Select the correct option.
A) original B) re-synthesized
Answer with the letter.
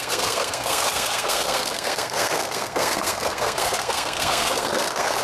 B